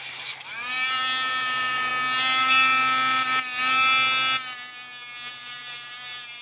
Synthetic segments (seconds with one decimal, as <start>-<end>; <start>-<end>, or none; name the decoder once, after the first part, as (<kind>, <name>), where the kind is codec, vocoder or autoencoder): 0.0-1.9 (vocoder, BigVGAN v2); 5.3-6.4